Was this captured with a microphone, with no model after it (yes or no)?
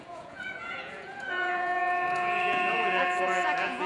no